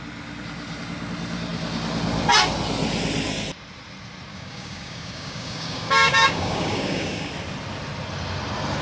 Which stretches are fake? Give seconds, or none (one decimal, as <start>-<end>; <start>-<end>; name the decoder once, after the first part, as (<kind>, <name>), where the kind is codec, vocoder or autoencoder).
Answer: 4.3-7.3 (codec, DAC)